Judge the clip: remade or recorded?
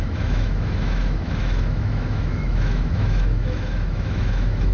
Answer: remade